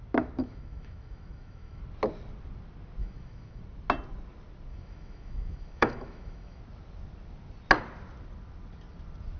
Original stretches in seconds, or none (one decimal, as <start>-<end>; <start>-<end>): 0.0-0.4; 1.8-3.0; 3.6-4.7; 6.6-9.4